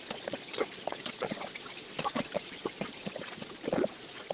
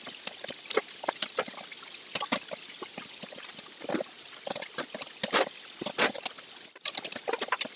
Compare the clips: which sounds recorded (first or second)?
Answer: second